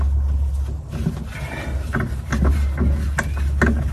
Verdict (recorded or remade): recorded